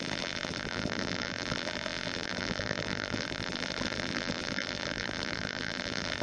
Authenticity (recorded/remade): remade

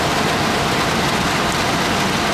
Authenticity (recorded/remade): recorded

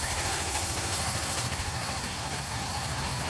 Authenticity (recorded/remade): remade